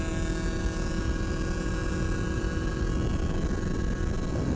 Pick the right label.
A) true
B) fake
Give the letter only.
A